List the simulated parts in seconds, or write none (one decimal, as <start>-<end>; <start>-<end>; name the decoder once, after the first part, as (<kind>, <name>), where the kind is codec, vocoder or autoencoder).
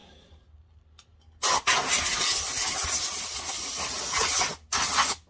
none